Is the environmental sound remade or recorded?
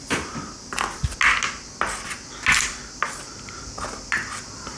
recorded